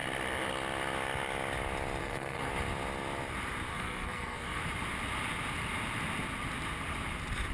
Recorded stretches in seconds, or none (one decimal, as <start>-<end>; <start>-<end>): 0.0-2.0; 2.5-3.7; 4.6-7.5